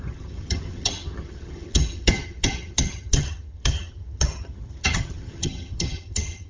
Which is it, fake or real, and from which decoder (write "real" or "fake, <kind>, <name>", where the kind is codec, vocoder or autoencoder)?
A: fake, vocoder, HiFi-GAN